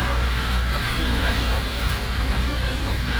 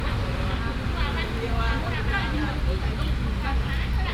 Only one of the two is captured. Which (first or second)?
second